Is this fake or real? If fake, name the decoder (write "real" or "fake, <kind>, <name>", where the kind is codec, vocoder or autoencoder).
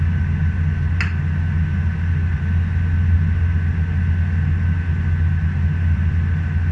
real